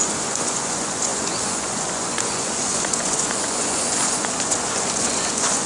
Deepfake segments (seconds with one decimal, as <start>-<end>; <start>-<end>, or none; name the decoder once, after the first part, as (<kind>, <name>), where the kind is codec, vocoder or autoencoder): 0.0-5.7 (vocoder, Vocos)